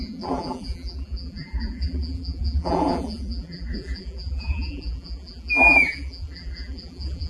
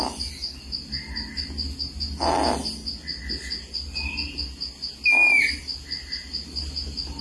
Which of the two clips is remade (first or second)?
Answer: first